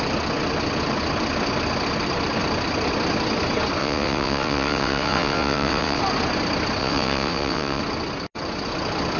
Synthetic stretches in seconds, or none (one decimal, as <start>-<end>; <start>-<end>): 3.8-6.0; 6.8-7.8